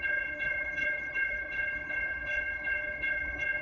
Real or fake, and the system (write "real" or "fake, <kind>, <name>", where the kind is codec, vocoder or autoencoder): fake, codec, HILCodec